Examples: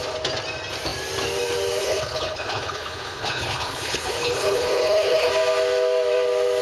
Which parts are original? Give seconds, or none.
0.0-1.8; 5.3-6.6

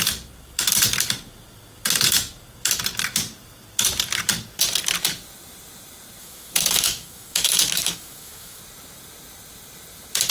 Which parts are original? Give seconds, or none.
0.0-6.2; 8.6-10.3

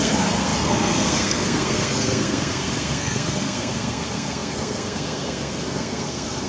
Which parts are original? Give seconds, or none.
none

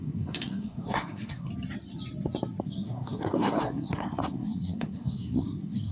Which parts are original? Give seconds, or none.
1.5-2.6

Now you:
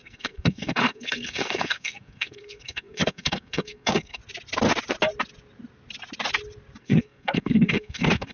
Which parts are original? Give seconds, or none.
4.2-6.8

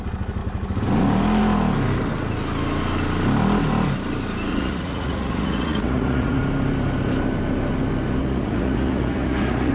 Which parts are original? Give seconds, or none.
0.0-4.5; 6.4-8.2

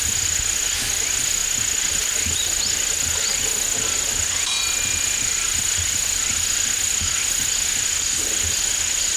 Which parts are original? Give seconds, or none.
0.0-9.2

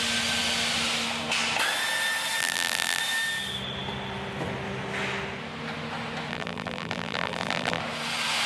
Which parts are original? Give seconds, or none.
0.0-2.4; 3.0-6.3; 7.8-8.5